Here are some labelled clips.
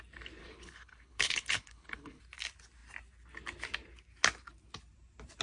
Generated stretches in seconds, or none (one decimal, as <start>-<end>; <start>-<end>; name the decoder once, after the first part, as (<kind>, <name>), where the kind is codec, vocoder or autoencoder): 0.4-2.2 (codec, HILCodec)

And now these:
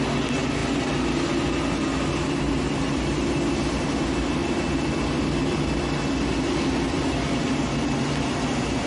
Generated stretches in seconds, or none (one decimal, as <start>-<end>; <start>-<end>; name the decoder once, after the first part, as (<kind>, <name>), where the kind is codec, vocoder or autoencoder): none

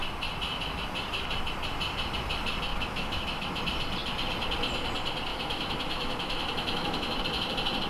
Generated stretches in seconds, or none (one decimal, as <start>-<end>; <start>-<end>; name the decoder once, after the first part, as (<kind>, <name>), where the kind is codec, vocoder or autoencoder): 2.7-3.6 (autoencoder, DAC-VAE); 5.3-7.2

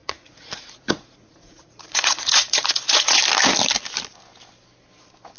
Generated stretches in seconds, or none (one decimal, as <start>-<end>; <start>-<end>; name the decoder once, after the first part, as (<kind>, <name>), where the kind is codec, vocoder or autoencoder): 0.0-3.2 (vocoder, Vocos)

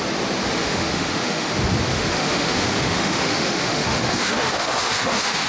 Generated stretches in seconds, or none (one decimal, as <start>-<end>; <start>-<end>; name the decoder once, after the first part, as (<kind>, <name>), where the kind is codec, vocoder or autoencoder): 0.6-1.5 (autoencoder, DAC-VAE); 1.9-5.5

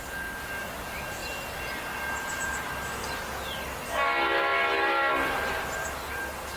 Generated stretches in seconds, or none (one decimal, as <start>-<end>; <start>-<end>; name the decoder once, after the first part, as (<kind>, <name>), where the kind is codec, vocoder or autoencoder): 1.2-1.8 (vocoder, BigVGAN v2)

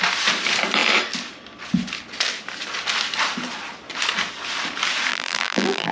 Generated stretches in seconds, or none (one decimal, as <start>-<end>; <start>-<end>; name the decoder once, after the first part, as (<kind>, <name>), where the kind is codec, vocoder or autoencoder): 5.1-5.9 (vocoder, BigVGAN v2)

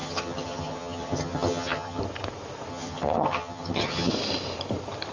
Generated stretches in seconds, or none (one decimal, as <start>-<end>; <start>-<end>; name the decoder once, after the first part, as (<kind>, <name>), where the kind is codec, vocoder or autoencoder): 0.0-2.0 (vocoder, HiFi-GAN); 2.7-4.1